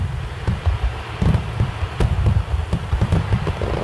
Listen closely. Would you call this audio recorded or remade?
recorded